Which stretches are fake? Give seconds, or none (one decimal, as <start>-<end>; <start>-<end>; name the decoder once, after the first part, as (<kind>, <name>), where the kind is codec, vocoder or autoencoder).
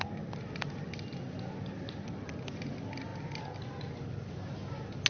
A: none